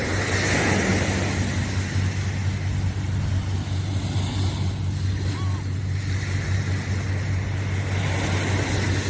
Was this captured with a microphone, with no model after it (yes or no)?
yes